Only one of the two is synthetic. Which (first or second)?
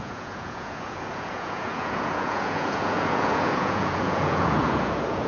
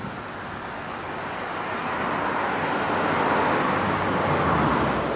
first